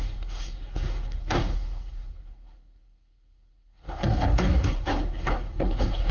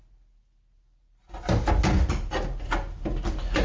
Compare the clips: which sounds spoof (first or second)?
first